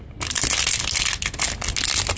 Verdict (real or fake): real